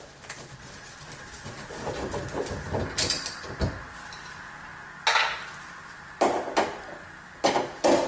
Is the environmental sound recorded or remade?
recorded